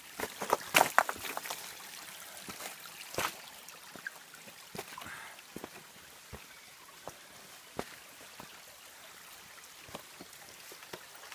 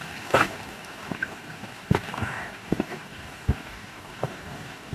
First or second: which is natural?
first